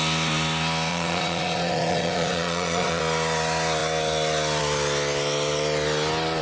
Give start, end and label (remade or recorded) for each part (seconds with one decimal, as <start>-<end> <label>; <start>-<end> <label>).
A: 0.0-0.9 recorded; 0.9-3.0 remade; 3.0-6.4 recorded